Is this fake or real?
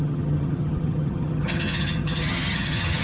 fake